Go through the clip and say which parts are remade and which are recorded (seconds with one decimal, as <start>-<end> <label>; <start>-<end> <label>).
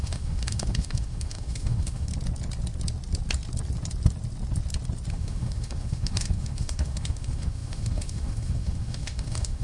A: 0.0-2.1 remade; 2.1-5.1 recorded; 5.1-9.6 remade